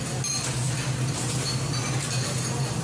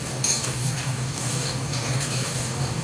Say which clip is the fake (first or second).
second